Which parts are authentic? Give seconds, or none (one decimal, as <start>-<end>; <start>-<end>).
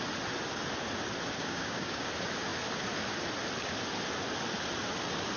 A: 0.0-1.4; 2.1-5.4